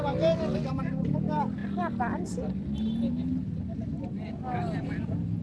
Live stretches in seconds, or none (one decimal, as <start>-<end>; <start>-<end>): 0.0-5.4